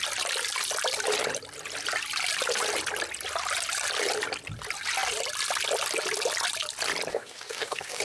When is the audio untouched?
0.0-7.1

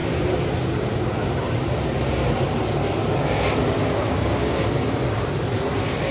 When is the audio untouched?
0.0-6.1

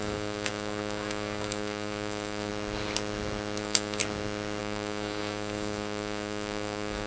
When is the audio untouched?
2.5-3.6; 4.0-4.6